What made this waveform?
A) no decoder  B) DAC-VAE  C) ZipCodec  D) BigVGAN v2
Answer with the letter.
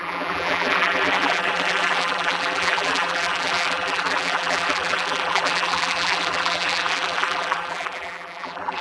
D